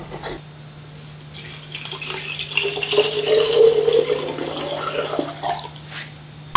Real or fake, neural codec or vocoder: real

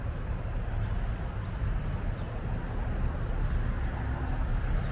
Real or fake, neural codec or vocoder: real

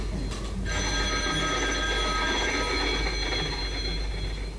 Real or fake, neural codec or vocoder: real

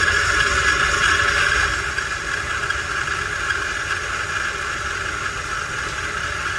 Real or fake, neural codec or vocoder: real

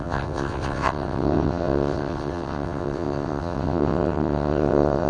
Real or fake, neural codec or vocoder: fake, vocoder, WaveNeXt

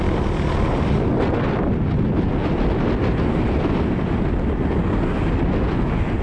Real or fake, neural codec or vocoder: real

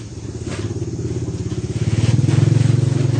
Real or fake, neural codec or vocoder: real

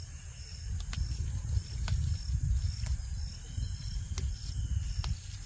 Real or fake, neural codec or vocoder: real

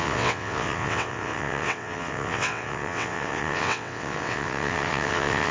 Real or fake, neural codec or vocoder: fake, vocoder, WaveNeXt